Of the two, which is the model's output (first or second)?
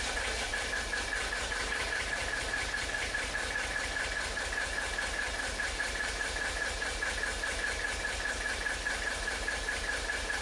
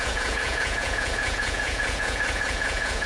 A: second